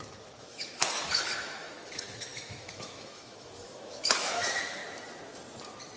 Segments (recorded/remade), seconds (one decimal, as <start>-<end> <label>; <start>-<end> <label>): 0.0-4.8 remade; 4.8-6.0 recorded